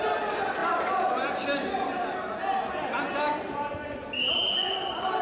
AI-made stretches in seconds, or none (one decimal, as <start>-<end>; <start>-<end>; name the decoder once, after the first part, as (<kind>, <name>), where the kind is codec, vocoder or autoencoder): none